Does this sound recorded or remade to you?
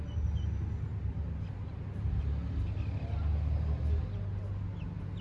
recorded